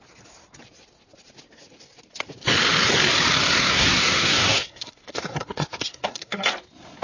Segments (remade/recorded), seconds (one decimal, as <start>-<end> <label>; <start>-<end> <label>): 0.0-3.7 recorded; 3.7-6.5 remade; 6.5-7.0 recorded